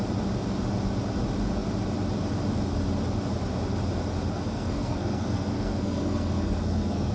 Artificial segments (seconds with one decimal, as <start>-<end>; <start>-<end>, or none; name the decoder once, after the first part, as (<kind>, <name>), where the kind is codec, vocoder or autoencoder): 4.3-7.1 (codec, SNAC)